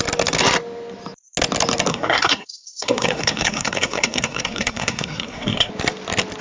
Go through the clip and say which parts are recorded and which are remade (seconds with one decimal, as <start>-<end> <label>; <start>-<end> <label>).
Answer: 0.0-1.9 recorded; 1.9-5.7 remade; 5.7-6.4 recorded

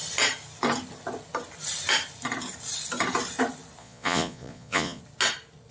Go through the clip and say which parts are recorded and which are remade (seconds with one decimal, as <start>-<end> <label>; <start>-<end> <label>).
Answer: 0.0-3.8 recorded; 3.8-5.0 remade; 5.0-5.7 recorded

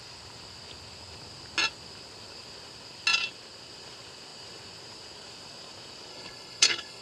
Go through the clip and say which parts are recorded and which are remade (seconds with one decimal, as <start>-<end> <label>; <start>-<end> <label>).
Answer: 0.0-6.1 recorded; 6.1-7.0 remade

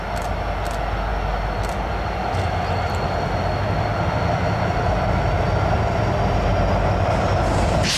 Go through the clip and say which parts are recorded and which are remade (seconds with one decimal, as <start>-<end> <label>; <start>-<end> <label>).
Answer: 0.0-8.0 recorded